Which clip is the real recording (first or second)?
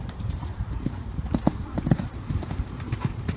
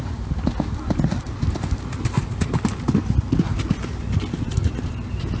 second